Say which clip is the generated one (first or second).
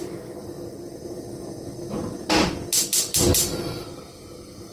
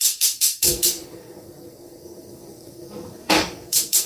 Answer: second